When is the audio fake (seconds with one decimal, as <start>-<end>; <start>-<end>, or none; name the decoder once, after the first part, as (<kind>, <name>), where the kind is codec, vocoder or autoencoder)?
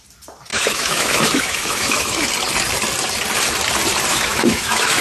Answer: 0.5-2.3 (autoencoder, DAC-VAE); 4.1-5.0